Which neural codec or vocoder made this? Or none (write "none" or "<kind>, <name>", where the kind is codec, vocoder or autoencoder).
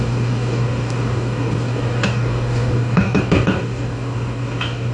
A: codec, DAC